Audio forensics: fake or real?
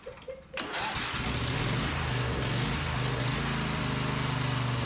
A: real